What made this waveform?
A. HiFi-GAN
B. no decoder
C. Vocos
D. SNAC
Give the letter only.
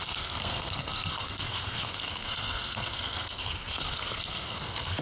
D